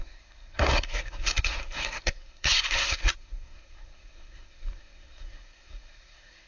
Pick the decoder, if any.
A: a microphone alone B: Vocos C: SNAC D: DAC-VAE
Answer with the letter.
C